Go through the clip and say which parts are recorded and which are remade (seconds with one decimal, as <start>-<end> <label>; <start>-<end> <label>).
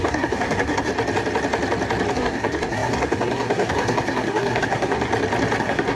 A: 0.0-0.9 remade; 0.9-2.1 recorded; 2.1-5.1 remade; 5.1-5.6 recorded; 5.6-6.0 remade